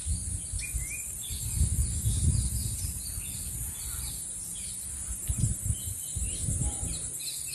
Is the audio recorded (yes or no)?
yes